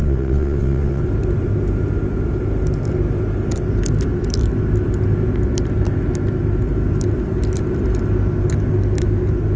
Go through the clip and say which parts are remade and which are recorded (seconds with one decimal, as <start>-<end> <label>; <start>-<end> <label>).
0.0-1.0 remade; 1.0-9.6 recorded